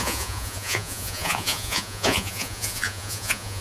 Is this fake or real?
fake